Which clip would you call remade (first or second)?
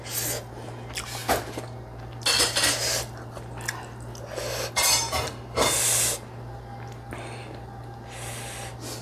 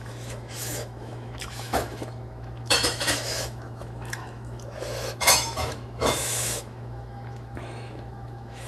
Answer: second